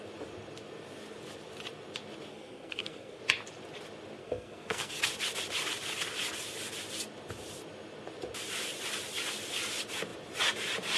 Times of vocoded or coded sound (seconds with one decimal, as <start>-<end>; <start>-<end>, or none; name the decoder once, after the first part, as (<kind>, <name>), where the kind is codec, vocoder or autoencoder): 2.3-3.2 (codec, SNAC); 4.2-5.0